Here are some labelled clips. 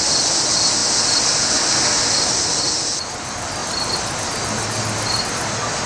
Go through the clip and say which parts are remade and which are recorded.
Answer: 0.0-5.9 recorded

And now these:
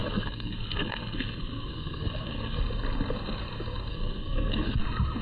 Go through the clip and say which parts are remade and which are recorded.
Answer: 0.0-2.6 remade; 2.6-3.9 recorded; 3.9-4.8 remade; 4.8-5.2 recorded

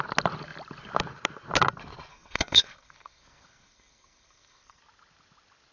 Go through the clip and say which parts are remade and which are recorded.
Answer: 0.0-2.1 recorded; 2.1-4.8 remade; 4.8-5.7 recorded

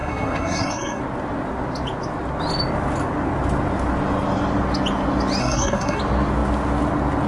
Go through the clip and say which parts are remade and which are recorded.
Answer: 0.0-1.0 remade; 1.0-5.4 recorded; 5.4-6.0 remade; 6.0-7.3 recorded

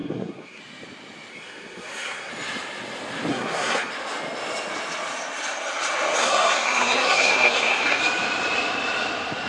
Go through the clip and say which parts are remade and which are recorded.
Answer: 0.0-0.6 remade; 0.6-1.3 recorded; 1.3-2.3 remade; 2.3-3.3 recorded; 3.3-3.9 remade; 3.9-6.2 recorded; 6.2-8.0 remade; 8.0-9.5 recorded

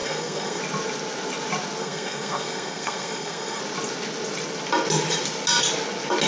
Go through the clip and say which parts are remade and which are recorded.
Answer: 0.0-0.6 remade; 0.6-1.8 recorded; 1.8-3.6 remade; 3.6-6.3 recorded

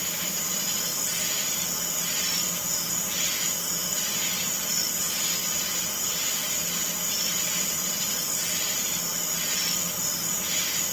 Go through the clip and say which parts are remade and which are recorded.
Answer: 0.0-10.9 recorded